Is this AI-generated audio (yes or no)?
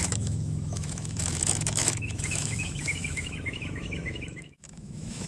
yes